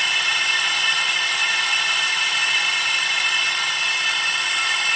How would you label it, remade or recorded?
recorded